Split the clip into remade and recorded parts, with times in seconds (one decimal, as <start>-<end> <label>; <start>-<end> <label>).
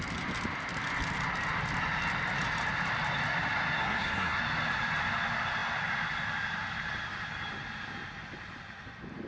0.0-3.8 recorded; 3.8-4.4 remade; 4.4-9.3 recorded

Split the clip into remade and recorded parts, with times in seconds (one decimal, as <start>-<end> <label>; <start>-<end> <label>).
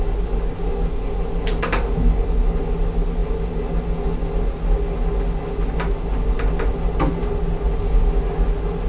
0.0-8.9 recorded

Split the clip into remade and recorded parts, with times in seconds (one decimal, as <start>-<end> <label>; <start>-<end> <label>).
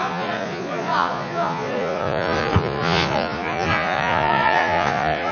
0.0-5.3 remade